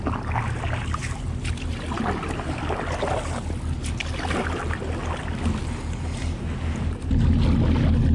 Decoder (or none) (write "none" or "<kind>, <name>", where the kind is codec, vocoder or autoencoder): none